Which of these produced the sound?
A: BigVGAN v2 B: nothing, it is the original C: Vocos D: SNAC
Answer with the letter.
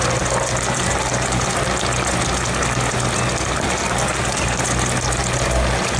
B